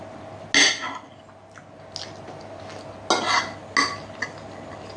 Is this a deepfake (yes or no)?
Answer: no